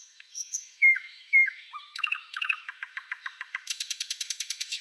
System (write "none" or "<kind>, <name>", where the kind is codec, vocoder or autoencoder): autoencoder, DAC-VAE